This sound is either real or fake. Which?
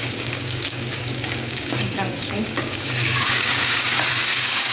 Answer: fake